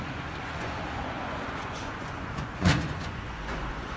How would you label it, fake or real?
fake